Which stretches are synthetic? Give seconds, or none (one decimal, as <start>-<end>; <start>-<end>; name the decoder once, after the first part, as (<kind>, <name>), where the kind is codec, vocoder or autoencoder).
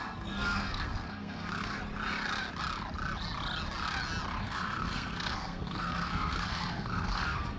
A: 0.0-1.8 (codec, SNAC); 4.4-7.6